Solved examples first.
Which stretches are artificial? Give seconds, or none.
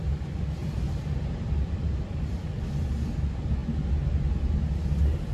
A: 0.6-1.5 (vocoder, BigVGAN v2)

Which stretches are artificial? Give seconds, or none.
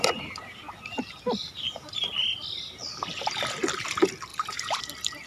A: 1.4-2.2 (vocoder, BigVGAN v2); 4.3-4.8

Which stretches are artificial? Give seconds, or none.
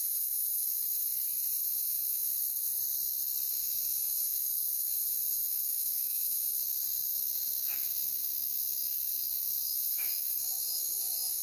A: 0.0-1.1 (autoencoder, DAC-VAE); 1.6-2.3; 3.5-11.4